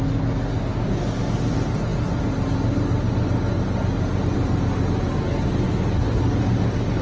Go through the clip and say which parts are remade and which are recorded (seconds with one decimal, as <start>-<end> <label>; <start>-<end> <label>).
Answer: 0.0-7.0 recorded